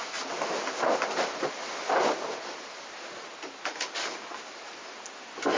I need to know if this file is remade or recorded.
recorded